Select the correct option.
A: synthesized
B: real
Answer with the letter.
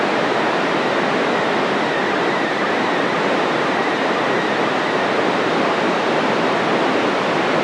B